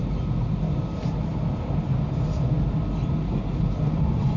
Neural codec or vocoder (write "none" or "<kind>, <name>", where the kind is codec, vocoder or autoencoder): none